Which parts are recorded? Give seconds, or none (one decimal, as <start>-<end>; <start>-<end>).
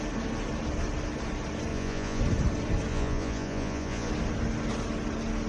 0.0-1.7; 2.2-2.9; 4.1-5.5